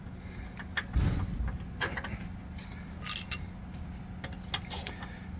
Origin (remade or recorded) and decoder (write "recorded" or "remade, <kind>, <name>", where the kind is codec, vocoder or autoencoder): recorded